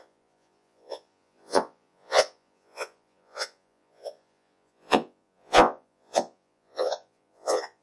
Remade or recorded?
remade